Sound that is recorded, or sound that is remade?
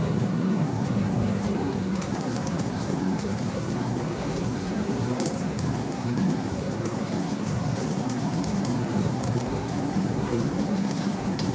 remade